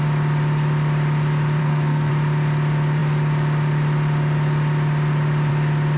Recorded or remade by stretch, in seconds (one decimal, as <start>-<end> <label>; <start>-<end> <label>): 0.0-1.6 recorded; 1.6-2.1 remade; 2.1-6.0 recorded